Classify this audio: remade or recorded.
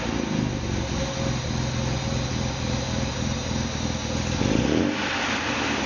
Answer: recorded